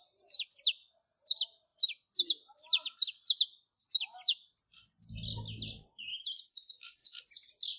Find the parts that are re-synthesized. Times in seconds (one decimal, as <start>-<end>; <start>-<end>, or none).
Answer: 6.1-7.2